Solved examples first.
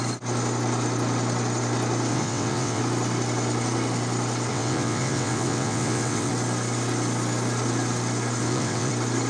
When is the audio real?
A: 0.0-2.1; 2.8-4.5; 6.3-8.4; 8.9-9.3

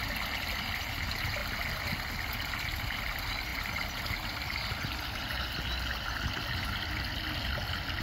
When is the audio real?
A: 0.0-8.0

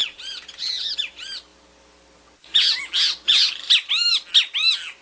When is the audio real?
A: 0.9-5.0

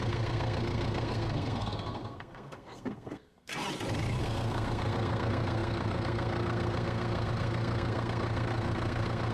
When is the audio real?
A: 3.5-4.2

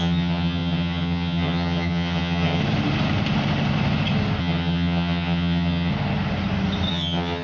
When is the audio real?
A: 2.6-4.4; 5.9-6.9

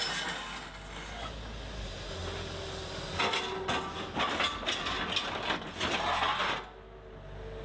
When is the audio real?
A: 0.0-7.6